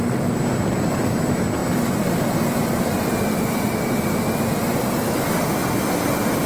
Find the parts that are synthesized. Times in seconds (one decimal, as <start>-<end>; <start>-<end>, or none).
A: none